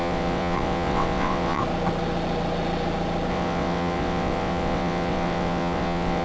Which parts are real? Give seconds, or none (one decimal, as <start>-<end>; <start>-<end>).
1.6-3.3